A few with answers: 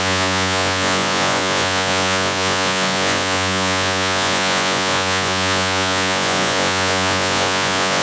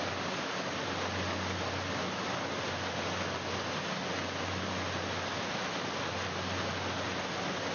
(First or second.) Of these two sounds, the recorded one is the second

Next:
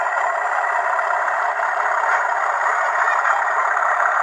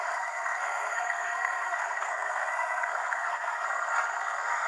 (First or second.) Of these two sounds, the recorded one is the first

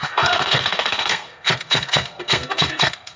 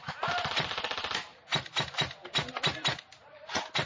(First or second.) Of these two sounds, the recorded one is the second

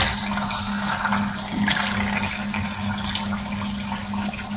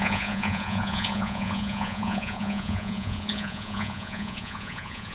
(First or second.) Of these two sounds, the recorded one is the first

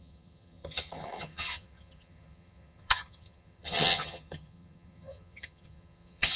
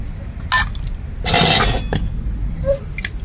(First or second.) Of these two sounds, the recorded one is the second